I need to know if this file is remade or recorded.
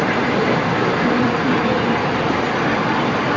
recorded